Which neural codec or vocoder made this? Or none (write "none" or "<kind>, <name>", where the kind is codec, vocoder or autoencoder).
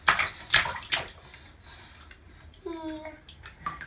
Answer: none